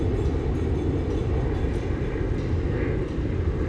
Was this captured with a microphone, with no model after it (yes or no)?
yes